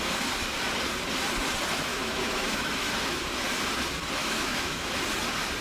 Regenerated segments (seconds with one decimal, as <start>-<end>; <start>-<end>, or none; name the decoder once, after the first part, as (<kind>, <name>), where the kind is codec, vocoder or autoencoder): 1.9-3.2 (autoencoder, DAC-VAE); 4.2-4.9